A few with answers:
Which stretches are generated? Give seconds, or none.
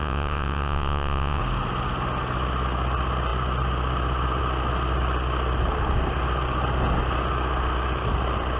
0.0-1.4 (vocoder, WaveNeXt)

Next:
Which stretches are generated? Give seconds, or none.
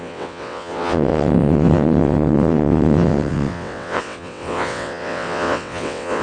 0.0-6.2 (vocoder, WaveNeXt)